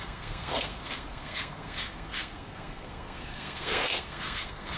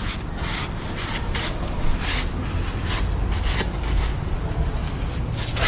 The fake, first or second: first